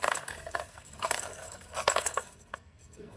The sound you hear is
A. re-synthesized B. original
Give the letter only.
A